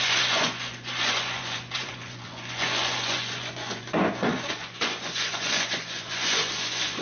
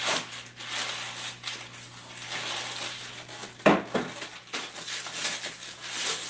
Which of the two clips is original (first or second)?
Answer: second